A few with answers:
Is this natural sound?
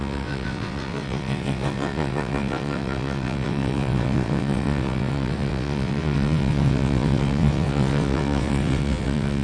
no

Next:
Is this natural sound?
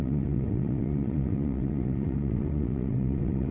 no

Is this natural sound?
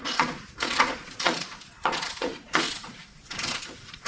no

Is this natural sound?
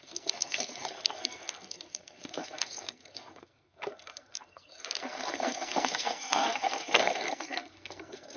no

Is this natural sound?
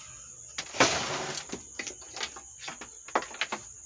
yes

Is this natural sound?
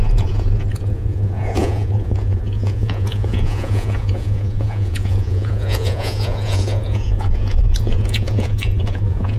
no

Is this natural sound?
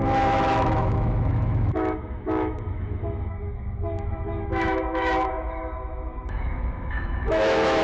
no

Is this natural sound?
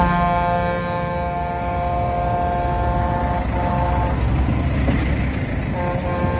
yes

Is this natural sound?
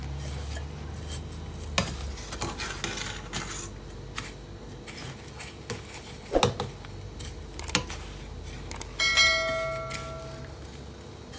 yes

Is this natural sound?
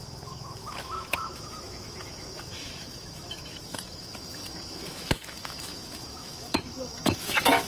no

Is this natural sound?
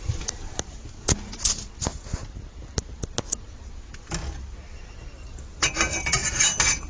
yes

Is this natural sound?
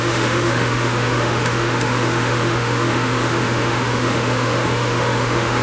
no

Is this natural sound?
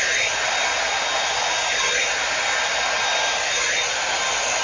yes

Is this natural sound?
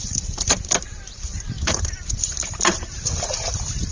no